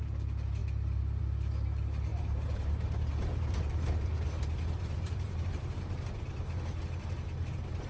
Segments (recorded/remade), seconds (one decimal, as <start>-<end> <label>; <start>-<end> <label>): 0.0-2.1 recorded; 2.1-6.6 remade; 6.6-7.9 recorded

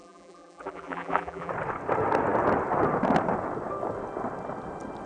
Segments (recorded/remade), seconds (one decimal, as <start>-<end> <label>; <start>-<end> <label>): 0.0-1.5 remade; 1.5-5.1 recorded

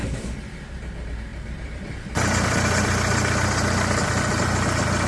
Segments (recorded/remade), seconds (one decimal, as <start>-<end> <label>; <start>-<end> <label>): 0.0-0.8 remade; 0.8-1.3 recorded; 1.3-4.4 remade; 4.4-5.1 recorded

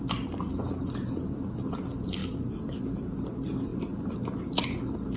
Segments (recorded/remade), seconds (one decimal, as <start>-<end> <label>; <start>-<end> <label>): 0.0-5.2 recorded

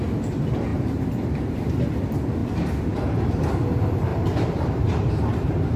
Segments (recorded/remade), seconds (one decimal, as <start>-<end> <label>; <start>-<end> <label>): 0.0-0.7 recorded; 0.7-1.9 remade; 1.9-2.4 recorded; 2.4-3.4 remade; 3.4-4.1 recorded; 4.1-5.8 remade

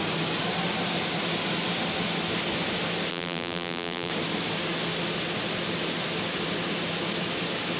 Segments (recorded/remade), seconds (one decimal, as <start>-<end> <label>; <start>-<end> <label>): 0.0-3.1 recorded; 3.1-4.1 remade; 4.1-7.8 recorded

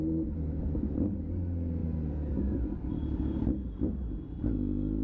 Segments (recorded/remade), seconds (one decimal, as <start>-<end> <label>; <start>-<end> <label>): 0.0-5.0 recorded

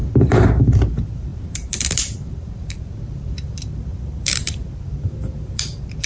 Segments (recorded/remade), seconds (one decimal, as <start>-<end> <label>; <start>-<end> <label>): 0.0-6.1 remade